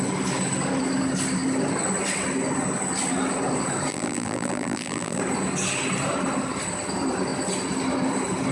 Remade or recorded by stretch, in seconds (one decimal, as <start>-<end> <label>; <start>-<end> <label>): 0.0-3.9 recorded; 3.9-5.2 remade; 5.2-8.5 recorded